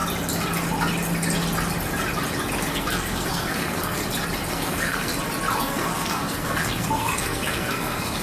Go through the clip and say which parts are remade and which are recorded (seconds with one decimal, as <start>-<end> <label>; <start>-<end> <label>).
0.0-2.6 recorded; 2.6-4.0 remade; 4.0-4.5 recorded; 4.5-5.1 remade; 5.1-5.6 recorded; 5.6-8.2 remade